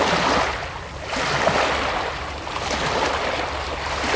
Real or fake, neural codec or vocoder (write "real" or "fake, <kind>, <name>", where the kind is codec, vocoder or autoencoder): real